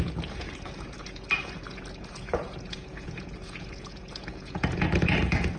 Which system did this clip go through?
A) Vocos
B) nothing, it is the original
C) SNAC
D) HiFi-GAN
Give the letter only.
A